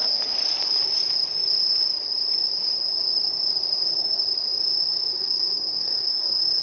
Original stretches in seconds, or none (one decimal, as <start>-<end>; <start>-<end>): 0.0-5.1

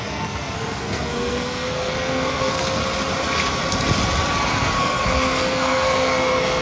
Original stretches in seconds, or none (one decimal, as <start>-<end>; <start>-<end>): 2.8-4.8

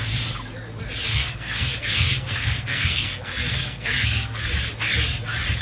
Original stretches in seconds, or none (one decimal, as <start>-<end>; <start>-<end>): 0.0-1.1; 4.4-5.6

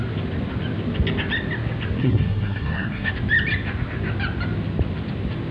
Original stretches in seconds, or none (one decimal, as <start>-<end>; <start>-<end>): 0.0-2.0; 3.1-5.5

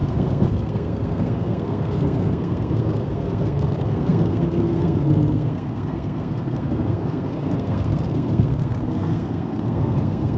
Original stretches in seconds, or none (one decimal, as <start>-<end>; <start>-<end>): none

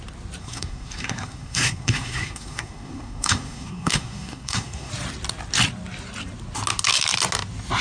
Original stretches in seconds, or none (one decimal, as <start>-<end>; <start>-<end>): 0.0-0.4; 4.9-7.8

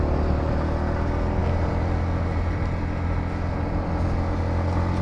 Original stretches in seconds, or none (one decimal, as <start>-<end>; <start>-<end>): 0.0-5.0

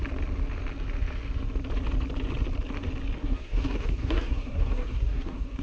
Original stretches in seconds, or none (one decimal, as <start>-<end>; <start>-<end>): 0.0-3.2